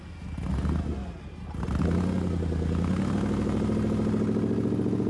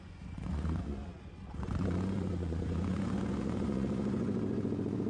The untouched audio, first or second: first